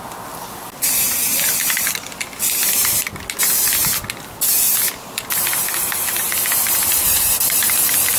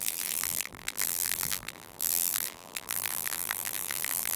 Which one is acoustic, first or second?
first